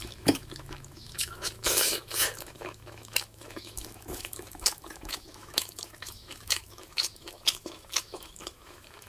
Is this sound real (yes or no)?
no